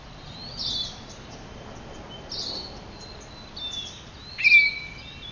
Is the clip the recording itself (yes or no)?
yes